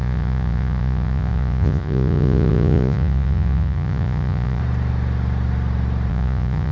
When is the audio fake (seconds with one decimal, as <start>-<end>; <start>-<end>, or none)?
0.0-4.6; 6.1-6.7

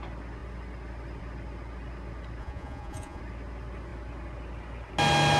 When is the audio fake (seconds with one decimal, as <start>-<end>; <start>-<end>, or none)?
2.4-3.2